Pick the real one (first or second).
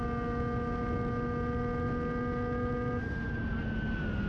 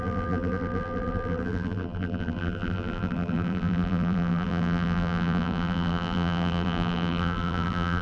first